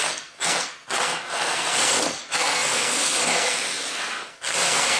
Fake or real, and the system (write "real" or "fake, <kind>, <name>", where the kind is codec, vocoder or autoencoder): fake, codec, SNAC